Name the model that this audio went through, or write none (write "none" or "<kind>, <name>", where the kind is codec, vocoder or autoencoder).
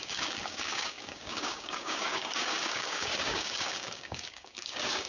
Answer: codec, DAC